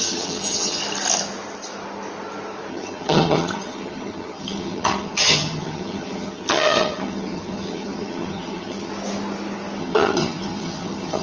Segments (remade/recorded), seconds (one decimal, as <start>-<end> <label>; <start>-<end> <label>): 0.0-0.8 remade; 0.8-2.7 recorded; 2.7-8.9 remade; 8.9-9.8 recorded; 9.8-11.2 remade

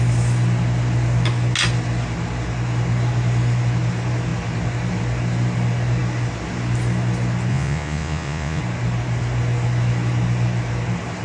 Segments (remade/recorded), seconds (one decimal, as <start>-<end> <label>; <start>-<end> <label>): 0.0-7.5 recorded; 7.5-8.6 remade; 8.6-11.2 recorded

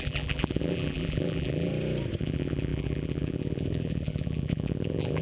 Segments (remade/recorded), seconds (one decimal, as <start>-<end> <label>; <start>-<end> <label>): 0.0-1.7 remade; 1.7-2.2 recorded; 2.2-5.2 remade

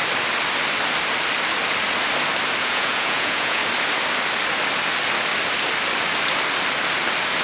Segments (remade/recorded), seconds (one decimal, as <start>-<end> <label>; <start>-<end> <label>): 0.0-2.6 recorded; 2.6-3.6 remade; 3.6-7.4 recorded